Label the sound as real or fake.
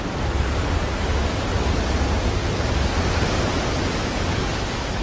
real